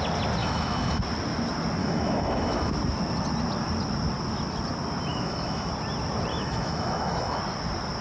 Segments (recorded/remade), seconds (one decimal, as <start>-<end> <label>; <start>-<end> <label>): 0.0-0.4 recorded; 0.4-1.0 remade; 1.0-1.8 recorded; 1.8-2.7 remade; 2.7-5.1 recorded; 5.1-5.7 remade; 5.7-6.3 recorded; 6.3-7.4 remade; 7.4-8.0 recorded